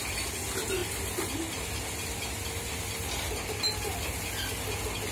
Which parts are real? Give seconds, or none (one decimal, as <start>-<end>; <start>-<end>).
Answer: 0.0-5.1